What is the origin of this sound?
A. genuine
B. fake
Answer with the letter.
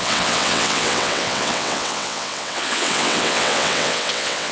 B